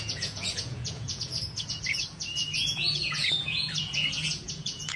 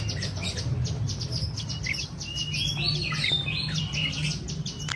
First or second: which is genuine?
second